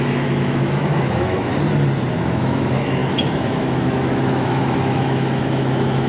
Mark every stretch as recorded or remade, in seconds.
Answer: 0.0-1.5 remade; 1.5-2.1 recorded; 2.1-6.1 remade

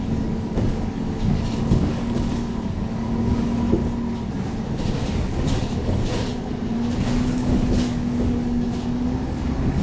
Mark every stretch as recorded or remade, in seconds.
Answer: 0.0-3.8 remade; 3.8-5.0 recorded; 5.0-9.8 remade

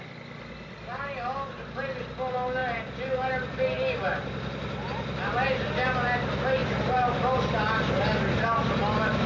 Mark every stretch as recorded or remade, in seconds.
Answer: 0.0-6.6 recorded; 6.6-8.0 remade; 8.0-9.3 recorded

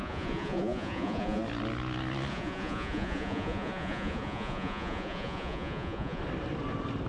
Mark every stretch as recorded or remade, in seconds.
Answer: 0.0-1.4 remade; 1.4-2.3 recorded; 2.3-6.2 remade; 6.2-7.1 recorded

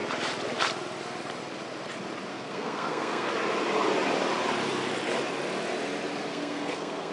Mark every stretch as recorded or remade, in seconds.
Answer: 0.0-2.3 recorded; 2.3-3.3 remade; 3.3-6.3 recorded; 6.3-7.1 remade

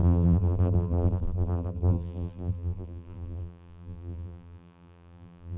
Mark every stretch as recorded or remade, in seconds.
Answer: 0.0-5.6 remade